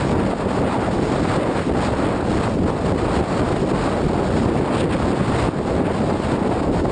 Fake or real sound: real